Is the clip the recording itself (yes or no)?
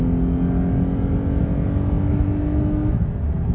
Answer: yes